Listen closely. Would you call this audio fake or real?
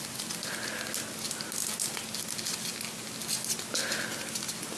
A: real